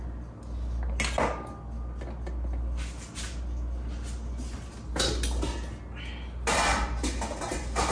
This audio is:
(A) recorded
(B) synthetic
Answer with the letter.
A